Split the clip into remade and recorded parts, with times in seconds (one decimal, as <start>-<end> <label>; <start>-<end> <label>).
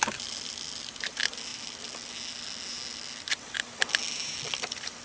0.0-5.0 recorded